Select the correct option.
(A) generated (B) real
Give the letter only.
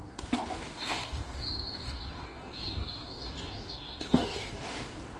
A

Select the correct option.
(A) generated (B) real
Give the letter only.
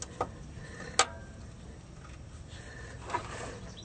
B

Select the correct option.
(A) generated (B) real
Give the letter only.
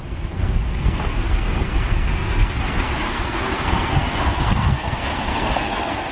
A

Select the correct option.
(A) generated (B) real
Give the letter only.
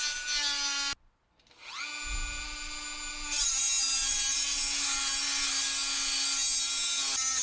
B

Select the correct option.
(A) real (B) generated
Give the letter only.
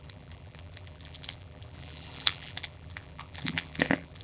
B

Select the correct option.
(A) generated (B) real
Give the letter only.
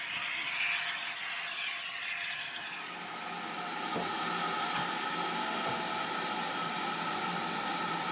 B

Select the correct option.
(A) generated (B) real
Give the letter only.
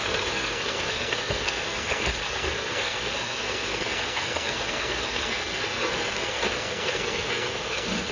A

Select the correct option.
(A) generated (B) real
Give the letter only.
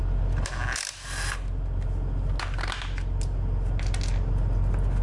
B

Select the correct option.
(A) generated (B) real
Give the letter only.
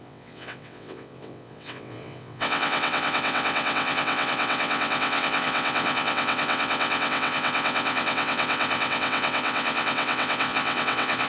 A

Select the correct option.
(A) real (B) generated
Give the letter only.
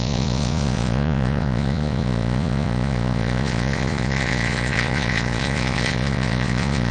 B